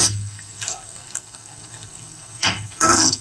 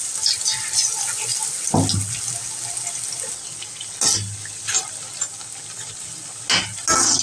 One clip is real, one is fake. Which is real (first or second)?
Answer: second